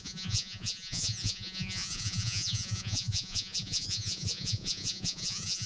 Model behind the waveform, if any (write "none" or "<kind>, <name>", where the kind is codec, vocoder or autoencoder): vocoder, Vocos